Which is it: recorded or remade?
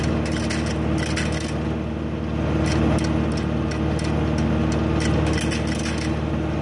recorded